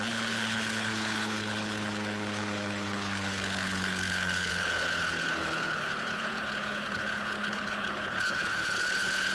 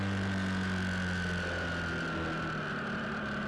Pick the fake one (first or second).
first